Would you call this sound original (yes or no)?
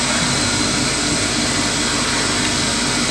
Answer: yes